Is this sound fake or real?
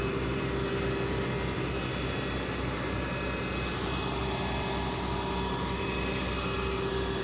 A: real